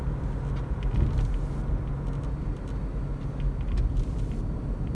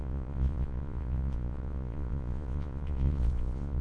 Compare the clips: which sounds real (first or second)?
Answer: first